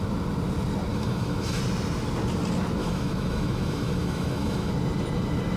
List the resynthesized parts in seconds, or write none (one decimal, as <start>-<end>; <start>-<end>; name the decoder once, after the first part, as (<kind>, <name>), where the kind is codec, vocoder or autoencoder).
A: 0.9-1.6 (autoencoder, DAC-VAE); 2.8-4.7